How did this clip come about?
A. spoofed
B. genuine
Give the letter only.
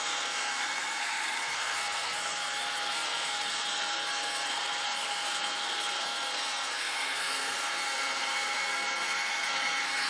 A